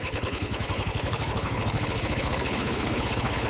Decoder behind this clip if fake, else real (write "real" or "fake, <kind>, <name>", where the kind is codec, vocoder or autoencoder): fake, codec, HILCodec